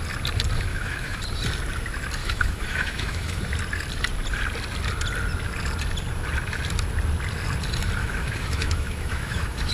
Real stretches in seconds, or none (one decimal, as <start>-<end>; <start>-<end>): 0.0-0.7; 1.2-2.2; 3.4-8.0